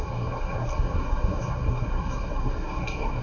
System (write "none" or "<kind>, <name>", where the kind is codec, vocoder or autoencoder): codec, SNAC